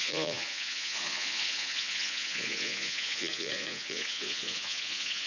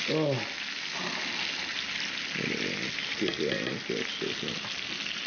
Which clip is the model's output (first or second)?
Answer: first